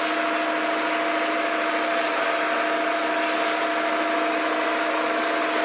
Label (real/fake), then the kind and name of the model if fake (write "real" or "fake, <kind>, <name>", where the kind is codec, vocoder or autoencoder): real